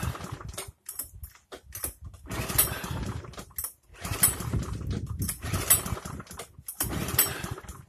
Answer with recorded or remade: recorded